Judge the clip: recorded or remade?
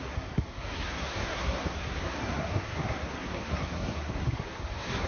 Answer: remade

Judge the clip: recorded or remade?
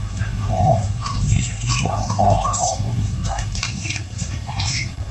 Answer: remade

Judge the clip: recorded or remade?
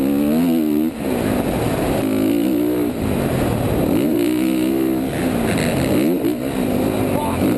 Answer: recorded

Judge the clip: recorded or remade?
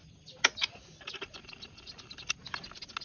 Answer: recorded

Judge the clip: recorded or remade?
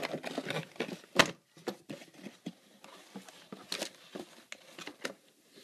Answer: recorded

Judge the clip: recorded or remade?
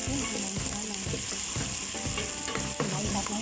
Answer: recorded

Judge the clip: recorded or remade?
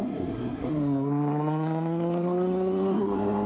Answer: remade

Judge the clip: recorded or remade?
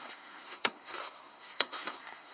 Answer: remade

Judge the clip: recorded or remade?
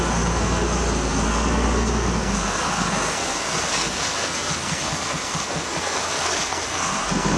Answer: remade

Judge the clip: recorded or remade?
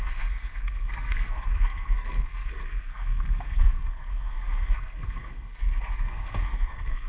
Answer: remade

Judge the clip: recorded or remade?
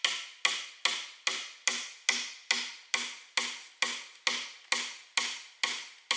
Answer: recorded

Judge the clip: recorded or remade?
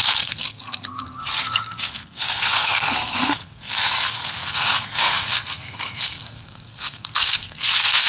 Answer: remade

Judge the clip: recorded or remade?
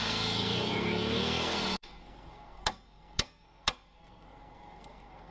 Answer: remade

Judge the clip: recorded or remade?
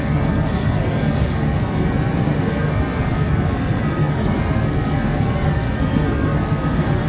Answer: remade